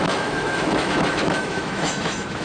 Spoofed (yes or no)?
yes